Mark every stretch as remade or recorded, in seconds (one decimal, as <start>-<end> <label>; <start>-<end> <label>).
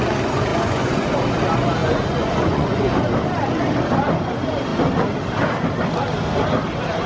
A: 0.0-0.5 recorded; 0.5-1.1 remade; 1.1-1.8 recorded; 1.8-3.0 remade; 3.0-7.1 recorded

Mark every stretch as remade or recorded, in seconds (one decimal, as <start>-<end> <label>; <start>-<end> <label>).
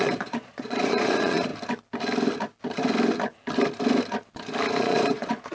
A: 0.0-1.5 remade; 1.5-4.8 recorded; 4.8-5.5 remade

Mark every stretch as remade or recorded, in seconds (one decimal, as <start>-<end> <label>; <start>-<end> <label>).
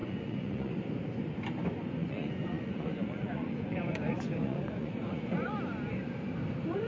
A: 0.0-0.7 remade; 0.7-2.0 recorded; 2.0-5.6 remade; 5.6-6.9 recorded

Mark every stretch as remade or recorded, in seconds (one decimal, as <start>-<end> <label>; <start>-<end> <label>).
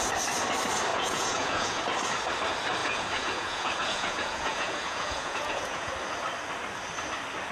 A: 0.0-0.9 recorded; 0.9-1.8 remade; 1.8-2.8 recorded; 2.8-5.9 remade; 5.9-7.5 recorded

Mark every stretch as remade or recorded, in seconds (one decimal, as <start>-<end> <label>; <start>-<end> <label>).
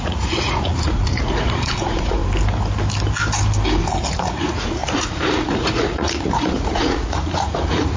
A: 0.0-2.2 remade; 2.2-4.1 recorded; 4.1-8.0 remade